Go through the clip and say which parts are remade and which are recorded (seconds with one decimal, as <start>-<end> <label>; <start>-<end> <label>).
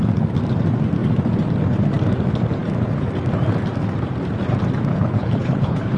0.0-4.9 recorded; 4.9-6.0 remade